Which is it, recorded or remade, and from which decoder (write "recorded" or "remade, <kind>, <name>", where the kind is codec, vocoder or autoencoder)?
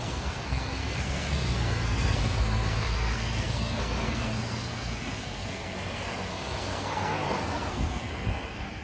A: remade, codec, SNAC